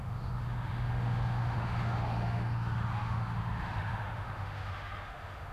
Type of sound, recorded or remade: remade